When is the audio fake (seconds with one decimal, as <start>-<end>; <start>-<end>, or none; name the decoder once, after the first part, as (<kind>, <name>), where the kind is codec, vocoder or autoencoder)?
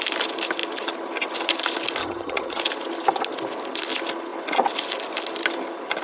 2.0-2.6 (vocoder, HiFi-GAN)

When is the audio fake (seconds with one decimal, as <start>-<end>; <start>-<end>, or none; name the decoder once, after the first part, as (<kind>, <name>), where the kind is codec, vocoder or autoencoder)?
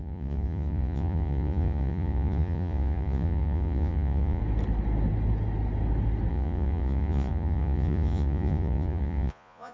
0.0-4.4 (vocoder, Vocos); 6.3-9.7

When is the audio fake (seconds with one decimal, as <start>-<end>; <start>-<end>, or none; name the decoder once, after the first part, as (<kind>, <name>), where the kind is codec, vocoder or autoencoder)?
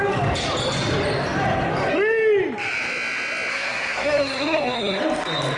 3.5-5.0 (codec, SNAC)